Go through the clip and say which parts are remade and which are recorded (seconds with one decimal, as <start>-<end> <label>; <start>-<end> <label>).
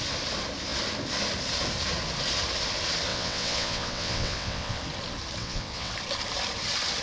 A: 0.0-3.1 recorded; 3.1-4.8 remade; 4.8-5.4 recorded; 5.4-5.9 remade; 5.9-7.0 recorded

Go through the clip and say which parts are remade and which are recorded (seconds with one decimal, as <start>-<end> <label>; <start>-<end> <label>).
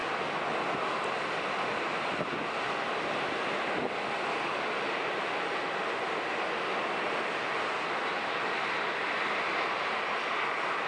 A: 0.0-3.4 remade; 3.4-10.9 recorded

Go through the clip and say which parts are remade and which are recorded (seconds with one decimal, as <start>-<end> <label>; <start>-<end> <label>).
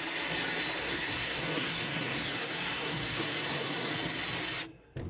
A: 0.0-0.8 recorded; 0.8-3.9 remade; 3.9-5.1 recorded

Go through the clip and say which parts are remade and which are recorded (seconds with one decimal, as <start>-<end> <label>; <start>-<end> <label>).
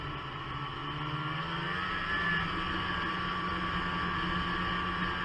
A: 0.0-5.2 recorded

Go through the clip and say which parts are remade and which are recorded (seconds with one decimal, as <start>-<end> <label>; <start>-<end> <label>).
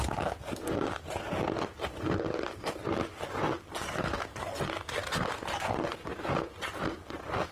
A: 0.0-7.5 recorded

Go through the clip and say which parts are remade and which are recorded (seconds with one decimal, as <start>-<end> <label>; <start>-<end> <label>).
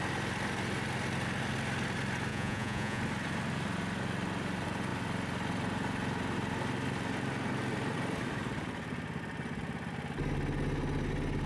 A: 0.0-2.3 recorded; 2.3-3.0 remade; 3.0-11.5 recorded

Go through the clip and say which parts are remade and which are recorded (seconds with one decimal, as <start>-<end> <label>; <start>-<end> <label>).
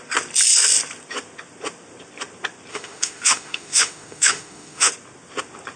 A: 0.0-2.7 recorded; 2.7-4.9 remade; 4.9-5.8 recorded